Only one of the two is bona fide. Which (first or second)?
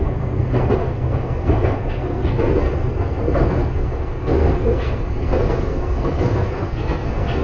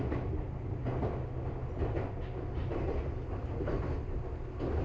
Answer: second